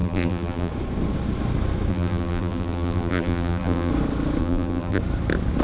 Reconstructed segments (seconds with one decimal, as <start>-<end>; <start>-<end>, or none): 0.0-0.7; 1.9-3.9; 4.4-5.0